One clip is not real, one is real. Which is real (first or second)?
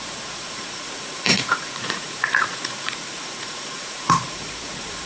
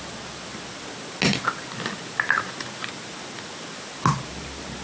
second